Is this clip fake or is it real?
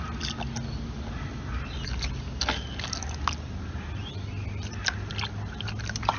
real